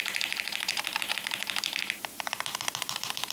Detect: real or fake fake